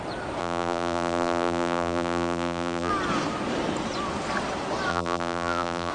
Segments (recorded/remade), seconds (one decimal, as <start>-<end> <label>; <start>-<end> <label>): 0.0-0.4 recorded; 0.4-2.9 remade; 2.9-4.9 recorded; 4.9-5.9 remade